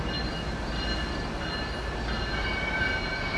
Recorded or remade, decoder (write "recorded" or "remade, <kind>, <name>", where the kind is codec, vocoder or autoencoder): recorded